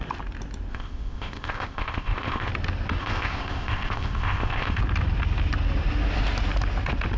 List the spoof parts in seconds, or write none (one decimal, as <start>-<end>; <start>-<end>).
0.7-2.5; 3.0-4.8